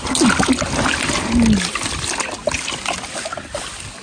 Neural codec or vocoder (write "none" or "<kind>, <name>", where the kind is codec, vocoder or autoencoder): none